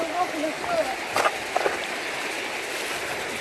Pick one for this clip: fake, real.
real